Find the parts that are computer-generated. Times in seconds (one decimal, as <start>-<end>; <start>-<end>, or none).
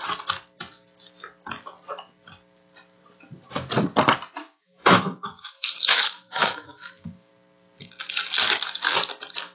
4.4-7.3